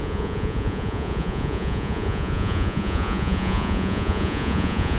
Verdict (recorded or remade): remade